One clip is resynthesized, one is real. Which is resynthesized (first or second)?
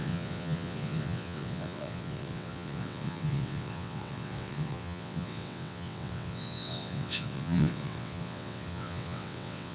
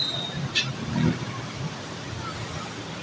first